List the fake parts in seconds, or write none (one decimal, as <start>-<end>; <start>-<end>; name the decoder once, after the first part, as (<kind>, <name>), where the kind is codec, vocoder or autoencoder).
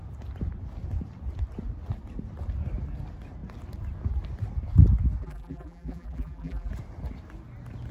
5.2-6.7 (vocoder, BigVGAN v2)